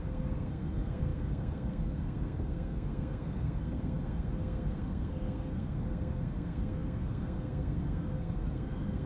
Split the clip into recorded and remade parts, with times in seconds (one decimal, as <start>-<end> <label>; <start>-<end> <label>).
0.0-9.1 remade